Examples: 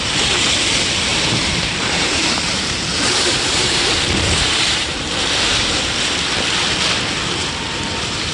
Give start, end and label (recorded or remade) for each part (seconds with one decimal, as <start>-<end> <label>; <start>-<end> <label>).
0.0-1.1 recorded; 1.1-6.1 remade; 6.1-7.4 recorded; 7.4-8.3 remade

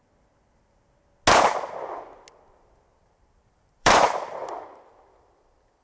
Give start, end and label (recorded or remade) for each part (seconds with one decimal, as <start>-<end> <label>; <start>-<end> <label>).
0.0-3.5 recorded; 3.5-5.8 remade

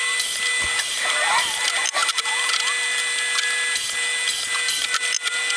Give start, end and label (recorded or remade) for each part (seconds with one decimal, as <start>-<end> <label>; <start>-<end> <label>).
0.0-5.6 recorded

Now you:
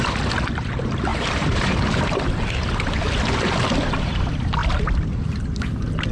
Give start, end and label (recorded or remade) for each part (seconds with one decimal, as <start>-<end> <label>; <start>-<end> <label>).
0.0-1.1 recorded; 1.1-2.2 remade; 2.2-6.1 recorded